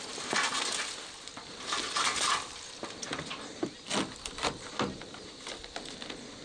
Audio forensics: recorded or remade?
recorded